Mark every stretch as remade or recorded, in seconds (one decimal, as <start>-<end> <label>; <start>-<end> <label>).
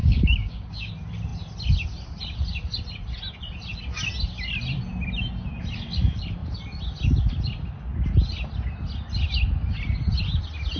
0.0-0.9 remade; 0.9-10.8 recorded